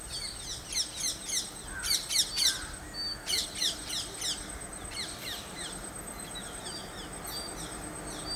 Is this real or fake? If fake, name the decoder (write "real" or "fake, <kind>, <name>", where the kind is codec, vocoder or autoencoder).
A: real